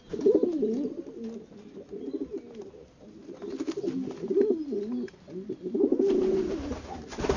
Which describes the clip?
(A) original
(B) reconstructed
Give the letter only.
A